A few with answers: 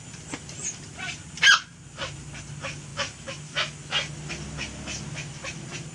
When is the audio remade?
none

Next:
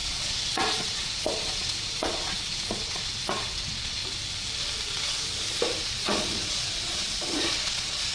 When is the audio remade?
0.0-4.0; 5.8-8.1

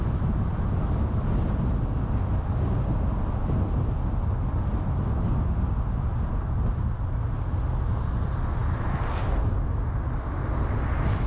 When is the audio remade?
none

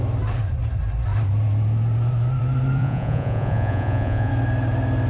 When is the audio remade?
2.8-4.3

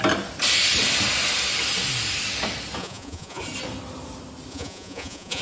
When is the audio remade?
2.8-3.4; 4.5-5.4